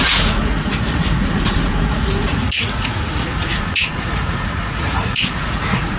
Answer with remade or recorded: remade